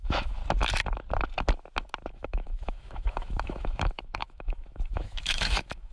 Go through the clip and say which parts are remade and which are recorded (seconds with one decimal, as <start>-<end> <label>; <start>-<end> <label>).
0.0-0.4 remade; 0.4-2.1 recorded; 2.1-5.9 remade